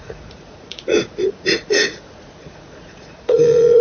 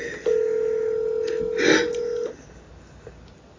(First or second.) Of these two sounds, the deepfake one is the first